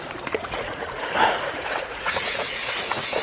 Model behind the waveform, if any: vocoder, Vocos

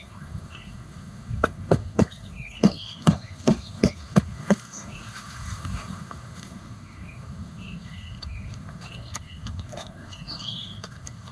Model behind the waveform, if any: codec, SNAC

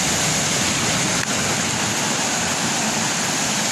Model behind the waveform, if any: none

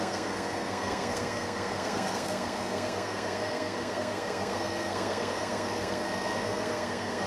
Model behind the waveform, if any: codec, SNAC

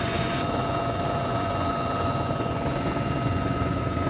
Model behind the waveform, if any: vocoder, Vocos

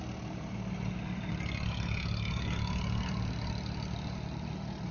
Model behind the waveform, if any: none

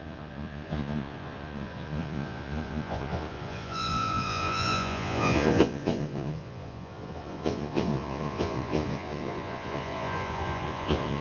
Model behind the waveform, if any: vocoder, Vocos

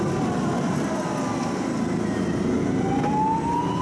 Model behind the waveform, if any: none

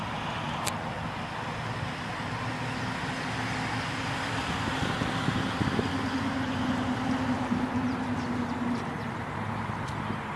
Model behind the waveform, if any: none